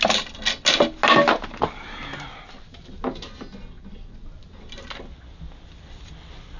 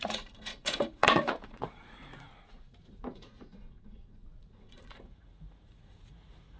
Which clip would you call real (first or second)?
first